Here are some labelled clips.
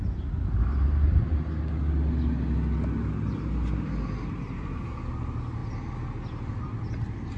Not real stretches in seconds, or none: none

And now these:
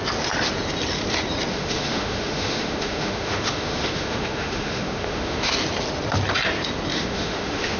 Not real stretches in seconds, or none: 1.5-5.5; 6.9-7.8

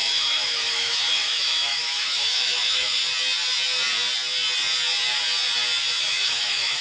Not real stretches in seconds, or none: 0.0-3.0; 6.0-6.8

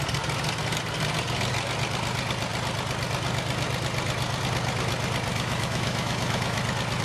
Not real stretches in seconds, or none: 5.3-6.6